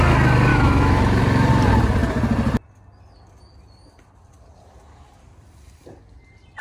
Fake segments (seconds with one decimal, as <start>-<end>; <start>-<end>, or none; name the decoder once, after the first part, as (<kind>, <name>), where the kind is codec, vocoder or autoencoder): 0.5-1.5 (autoencoder, DAC-VAE)